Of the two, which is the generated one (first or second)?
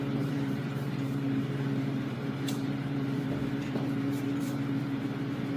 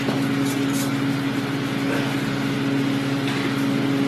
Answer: first